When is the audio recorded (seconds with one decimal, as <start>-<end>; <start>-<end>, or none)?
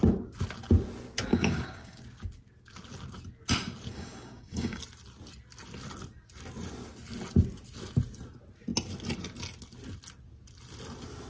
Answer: 0.0-1.3; 2.0-3.9; 4.8-11.3